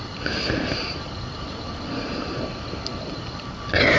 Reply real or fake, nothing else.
real